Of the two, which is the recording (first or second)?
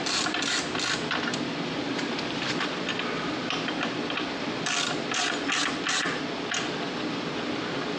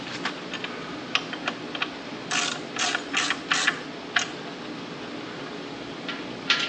second